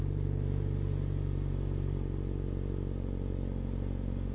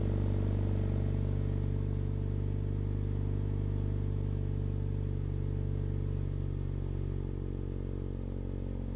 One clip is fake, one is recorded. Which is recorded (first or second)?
second